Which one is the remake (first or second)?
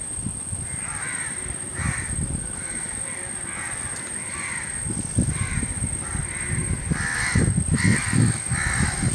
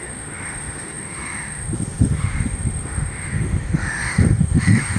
second